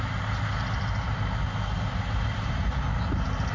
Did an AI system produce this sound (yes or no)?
no